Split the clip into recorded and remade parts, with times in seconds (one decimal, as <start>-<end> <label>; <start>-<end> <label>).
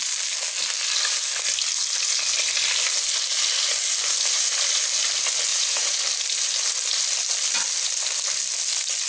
0.0-5.5 recorded; 5.5-6.0 remade; 6.0-9.1 recorded